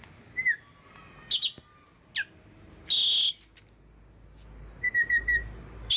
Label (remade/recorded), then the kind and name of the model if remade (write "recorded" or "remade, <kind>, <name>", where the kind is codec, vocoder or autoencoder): recorded